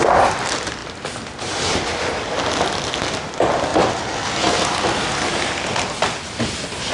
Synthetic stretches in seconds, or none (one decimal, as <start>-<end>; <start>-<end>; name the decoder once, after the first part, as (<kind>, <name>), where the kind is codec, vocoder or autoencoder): none